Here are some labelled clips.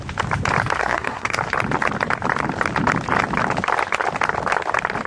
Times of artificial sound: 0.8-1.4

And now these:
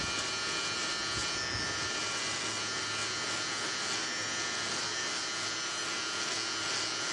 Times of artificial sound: none

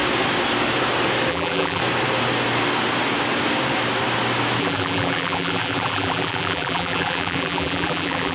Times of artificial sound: 1.3-1.8; 4.6-8.3

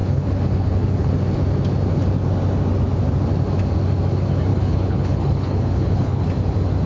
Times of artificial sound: 0.0-1.1; 4.5-6.3

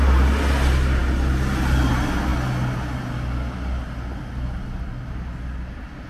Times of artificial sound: none

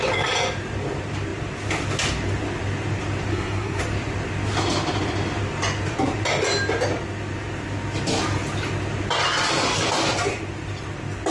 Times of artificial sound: 3.3-3.8